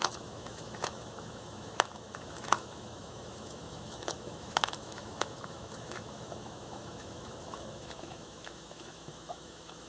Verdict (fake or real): fake